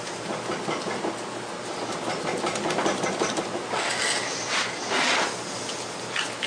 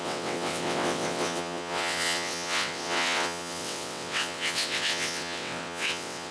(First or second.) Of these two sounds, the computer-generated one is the second